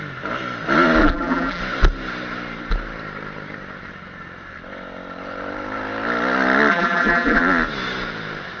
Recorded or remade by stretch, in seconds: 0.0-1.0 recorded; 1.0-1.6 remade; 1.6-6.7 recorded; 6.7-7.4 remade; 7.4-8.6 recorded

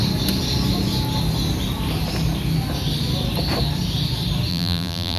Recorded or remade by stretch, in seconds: 0.0-4.5 recorded; 4.5-5.2 remade

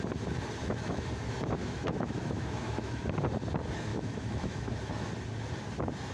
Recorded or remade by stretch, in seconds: 0.0-0.6 recorded; 0.6-1.1 remade; 1.1-1.6 recorded; 1.6-3.0 remade; 3.0-3.9 recorded; 3.9-5.1 remade; 5.1-6.1 recorded